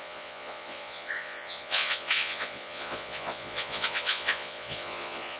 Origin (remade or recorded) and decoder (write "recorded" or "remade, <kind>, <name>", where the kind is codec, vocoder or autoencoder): remade, vocoder, Vocos